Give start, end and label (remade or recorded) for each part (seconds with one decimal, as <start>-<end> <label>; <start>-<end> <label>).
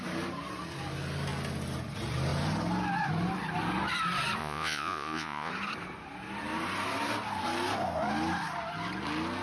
0.0-4.4 recorded; 4.4-5.5 remade; 5.5-9.4 recorded